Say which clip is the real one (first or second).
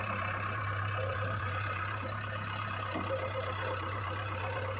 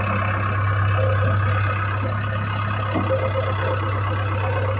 second